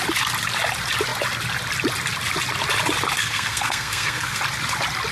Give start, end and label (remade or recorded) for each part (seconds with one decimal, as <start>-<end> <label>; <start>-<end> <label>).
0.0-3.2 recorded; 3.2-4.4 remade; 4.4-5.1 recorded